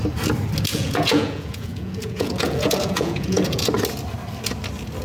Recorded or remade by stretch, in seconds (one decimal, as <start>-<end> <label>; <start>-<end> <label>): 0.0-0.7 recorded; 0.7-3.7 remade; 3.7-5.0 recorded